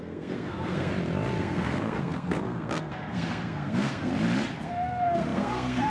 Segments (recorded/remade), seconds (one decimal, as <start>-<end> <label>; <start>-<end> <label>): 0.0-0.9 remade; 0.9-1.4 recorded; 1.4-4.1 remade; 4.1-4.6 recorded; 4.6-5.9 remade